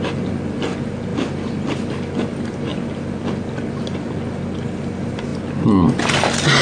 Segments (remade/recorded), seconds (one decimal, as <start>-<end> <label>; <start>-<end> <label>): 0.0-1.1 remade; 1.1-1.7 recorded; 1.7-6.6 remade